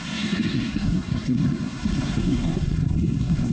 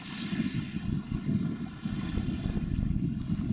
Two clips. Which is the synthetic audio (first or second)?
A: first